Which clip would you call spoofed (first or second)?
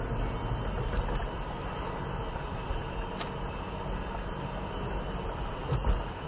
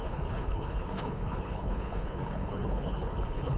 second